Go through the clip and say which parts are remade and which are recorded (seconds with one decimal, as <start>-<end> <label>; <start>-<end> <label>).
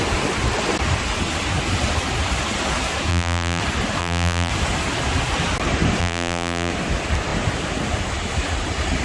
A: 0.0-3.1 recorded; 3.1-3.6 remade; 3.6-4.0 recorded; 4.0-4.5 remade; 4.5-6.0 recorded; 6.0-6.7 remade; 6.7-9.0 recorded